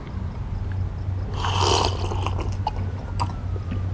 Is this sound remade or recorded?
recorded